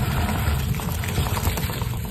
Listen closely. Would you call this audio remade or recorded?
recorded